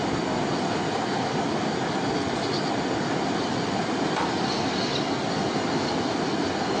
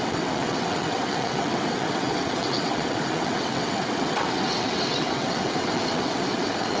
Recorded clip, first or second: first